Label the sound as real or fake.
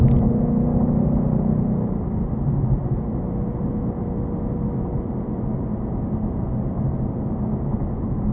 real